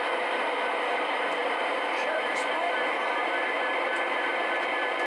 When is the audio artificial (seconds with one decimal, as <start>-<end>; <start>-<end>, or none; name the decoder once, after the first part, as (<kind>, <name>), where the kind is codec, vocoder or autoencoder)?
1.4-4.5 (vocoder, BigVGAN v2)